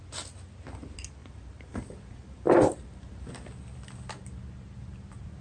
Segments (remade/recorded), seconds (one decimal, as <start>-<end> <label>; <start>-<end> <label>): 0.0-1.2 recorded; 1.2-3.3 remade; 3.3-5.4 recorded